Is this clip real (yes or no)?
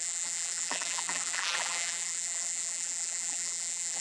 no